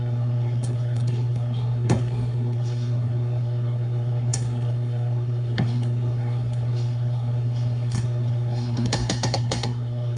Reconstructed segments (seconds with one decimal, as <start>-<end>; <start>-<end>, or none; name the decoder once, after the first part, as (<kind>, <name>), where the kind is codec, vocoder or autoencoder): 0.0-10.2 (codec, SNAC)